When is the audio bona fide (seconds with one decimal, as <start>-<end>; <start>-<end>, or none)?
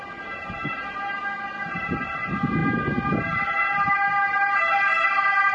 0.0-5.5